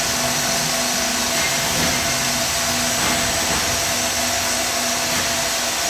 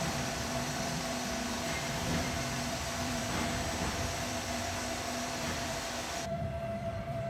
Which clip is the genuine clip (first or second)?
first